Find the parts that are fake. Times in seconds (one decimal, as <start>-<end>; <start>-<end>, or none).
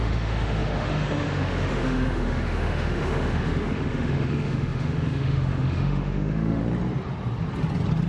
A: 0.0-6.6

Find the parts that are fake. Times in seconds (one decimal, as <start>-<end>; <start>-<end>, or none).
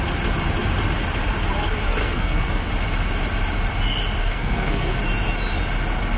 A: 2.0-2.7; 4.2-5.0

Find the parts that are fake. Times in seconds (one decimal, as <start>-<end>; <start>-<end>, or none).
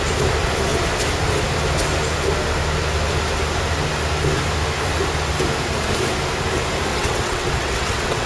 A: 6.9-8.3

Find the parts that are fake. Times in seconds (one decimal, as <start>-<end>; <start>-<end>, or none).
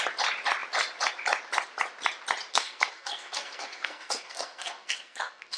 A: 2.5-5.6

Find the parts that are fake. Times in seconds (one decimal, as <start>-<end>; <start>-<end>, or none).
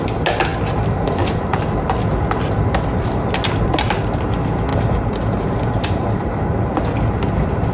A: 4.7-6.1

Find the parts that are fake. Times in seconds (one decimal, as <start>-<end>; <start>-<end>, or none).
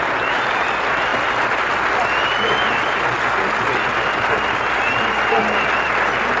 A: none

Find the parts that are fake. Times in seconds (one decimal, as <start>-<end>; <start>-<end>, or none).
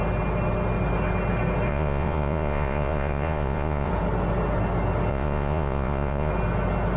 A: 1.7-3.9; 5.1-6.3